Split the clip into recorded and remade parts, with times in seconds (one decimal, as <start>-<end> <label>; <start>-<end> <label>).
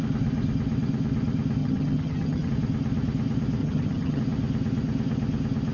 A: 0.0-1.6 recorded; 1.6-2.5 remade; 2.5-3.6 recorded; 3.6-4.2 remade; 4.2-5.7 recorded